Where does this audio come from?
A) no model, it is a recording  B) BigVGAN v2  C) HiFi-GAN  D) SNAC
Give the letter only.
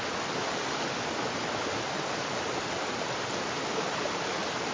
A